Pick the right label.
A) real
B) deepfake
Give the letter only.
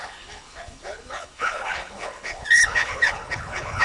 B